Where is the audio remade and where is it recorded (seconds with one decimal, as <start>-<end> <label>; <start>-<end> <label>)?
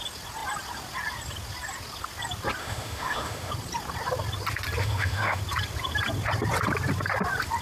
0.0-2.6 recorded; 2.6-3.5 remade; 3.5-4.8 recorded; 4.8-5.4 remade; 5.4-7.6 recorded